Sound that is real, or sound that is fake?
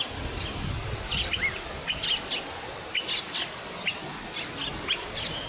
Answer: real